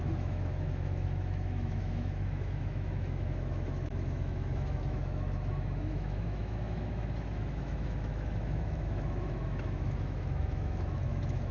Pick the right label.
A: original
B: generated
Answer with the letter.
B